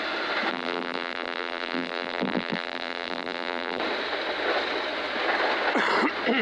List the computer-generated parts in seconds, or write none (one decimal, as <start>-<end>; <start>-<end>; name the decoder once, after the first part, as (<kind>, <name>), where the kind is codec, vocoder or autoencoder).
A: 0.5-3.8 (vocoder, BigVGAN v2)